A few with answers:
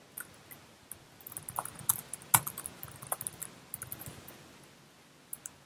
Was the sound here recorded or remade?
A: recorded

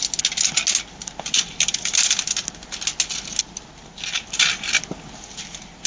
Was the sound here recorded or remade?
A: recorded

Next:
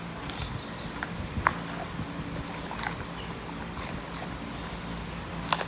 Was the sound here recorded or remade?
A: recorded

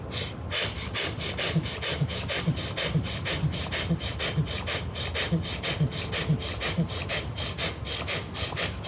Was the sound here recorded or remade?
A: recorded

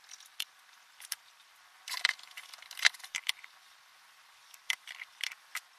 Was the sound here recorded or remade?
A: remade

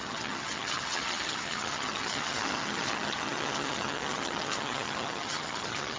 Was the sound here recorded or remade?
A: remade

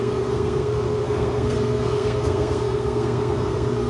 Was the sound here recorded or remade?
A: remade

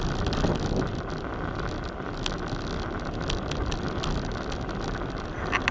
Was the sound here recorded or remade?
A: recorded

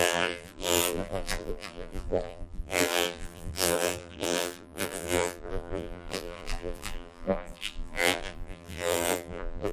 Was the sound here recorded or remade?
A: remade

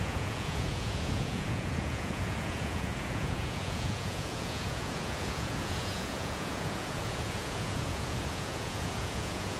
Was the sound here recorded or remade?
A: remade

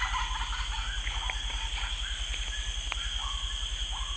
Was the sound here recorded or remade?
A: recorded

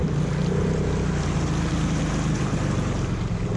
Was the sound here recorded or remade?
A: recorded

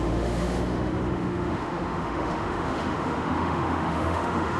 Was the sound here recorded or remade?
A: remade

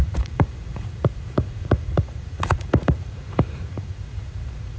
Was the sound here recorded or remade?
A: remade